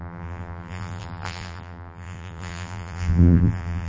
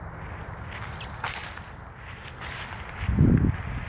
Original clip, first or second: second